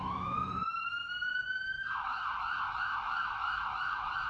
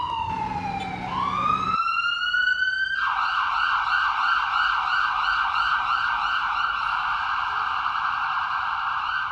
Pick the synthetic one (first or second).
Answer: first